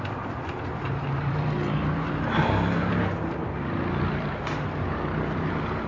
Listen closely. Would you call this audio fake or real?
fake